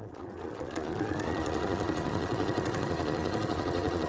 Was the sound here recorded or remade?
remade